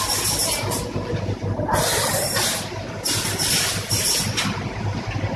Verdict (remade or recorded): recorded